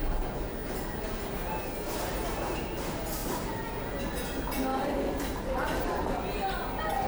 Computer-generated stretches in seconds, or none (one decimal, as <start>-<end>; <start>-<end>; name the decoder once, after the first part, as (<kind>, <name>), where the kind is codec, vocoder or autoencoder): 4.7-6.2 (vocoder, BigVGAN v2)